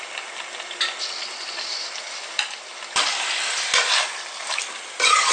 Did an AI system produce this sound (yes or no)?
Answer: no